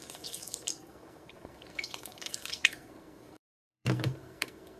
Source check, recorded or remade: remade